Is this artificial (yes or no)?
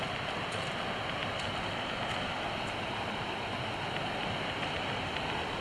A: no